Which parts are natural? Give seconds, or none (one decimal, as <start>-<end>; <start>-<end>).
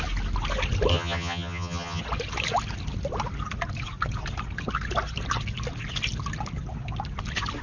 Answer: 0.0-0.9; 2.0-7.6